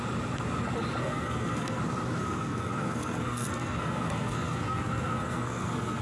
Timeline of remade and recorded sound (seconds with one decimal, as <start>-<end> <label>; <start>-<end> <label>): 0.0-1.0 recorded; 1.0-1.8 remade; 1.8-2.2 recorded; 2.2-6.0 remade